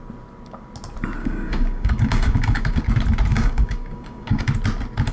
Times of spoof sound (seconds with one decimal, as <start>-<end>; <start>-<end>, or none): 1.2-2.8; 3.3-4.5